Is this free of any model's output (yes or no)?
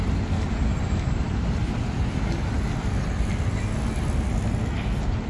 yes